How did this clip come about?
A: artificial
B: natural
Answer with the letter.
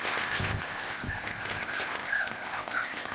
A